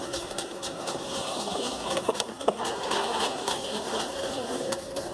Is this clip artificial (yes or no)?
yes